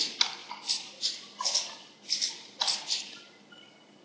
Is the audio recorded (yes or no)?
yes